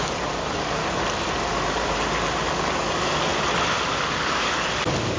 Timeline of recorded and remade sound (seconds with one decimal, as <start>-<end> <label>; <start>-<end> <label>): 0.0-0.8 remade; 0.8-2.6 recorded; 2.6-3.3 remade; 3.3-4.1 recorded; 4.1-5.2 remade